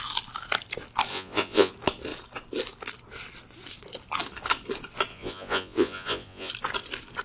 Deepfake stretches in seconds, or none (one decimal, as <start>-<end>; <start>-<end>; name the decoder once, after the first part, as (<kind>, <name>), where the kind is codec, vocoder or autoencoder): 1.1-1.7 (vocoder, Vocos); 5.1-6.5